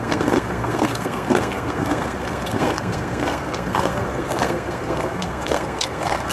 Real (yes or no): no